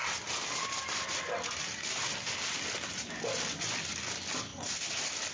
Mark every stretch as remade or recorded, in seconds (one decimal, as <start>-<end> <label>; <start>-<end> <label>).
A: 0.0-5.3 recorded